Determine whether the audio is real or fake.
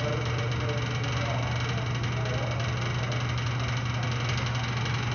real